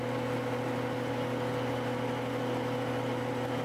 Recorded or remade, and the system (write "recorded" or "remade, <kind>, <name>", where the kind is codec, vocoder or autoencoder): recorded